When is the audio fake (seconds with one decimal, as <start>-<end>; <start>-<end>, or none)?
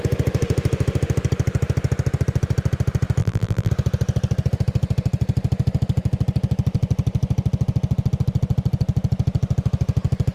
3.2-3.7